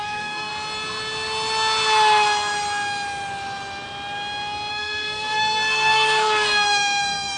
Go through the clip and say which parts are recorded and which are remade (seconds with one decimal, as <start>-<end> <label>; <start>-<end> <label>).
0.0-0.5 remade; 0.5-4.7 recorded; 4.7-7.4 remade